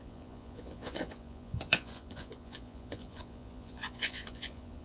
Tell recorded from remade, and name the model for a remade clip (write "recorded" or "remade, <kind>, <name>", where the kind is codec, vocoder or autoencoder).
remade, vocoder, Vocos